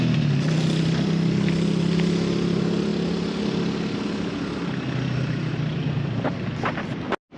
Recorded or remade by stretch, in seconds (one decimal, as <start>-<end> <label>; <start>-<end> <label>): 0.0-7.4 recorded